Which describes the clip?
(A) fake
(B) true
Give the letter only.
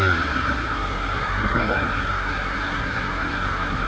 A